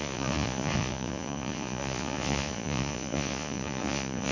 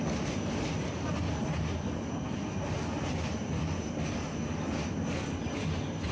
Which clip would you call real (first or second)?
second